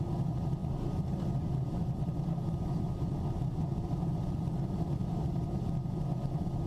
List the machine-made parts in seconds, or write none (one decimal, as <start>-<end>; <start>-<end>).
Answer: none